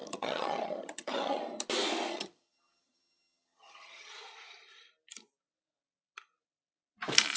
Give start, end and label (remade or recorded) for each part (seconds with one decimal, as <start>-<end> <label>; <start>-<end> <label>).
0.0-1.4 remade; 1.4-2.1 recorded; 2.1-4.1 remade; 4.1-7.4 recorded